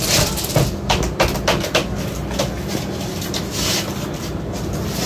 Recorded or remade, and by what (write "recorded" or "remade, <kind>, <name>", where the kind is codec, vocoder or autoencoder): recorded